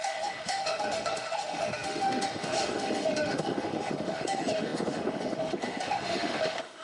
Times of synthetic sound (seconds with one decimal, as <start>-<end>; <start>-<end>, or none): 0.0-6.8